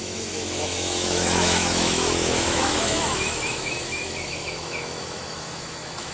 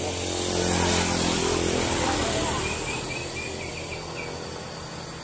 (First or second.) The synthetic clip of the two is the first